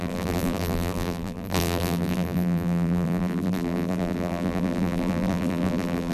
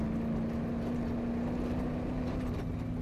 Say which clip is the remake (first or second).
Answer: first